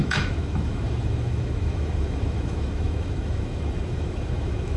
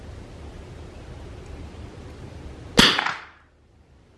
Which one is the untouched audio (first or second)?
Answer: second